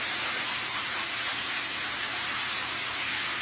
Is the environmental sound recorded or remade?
recorded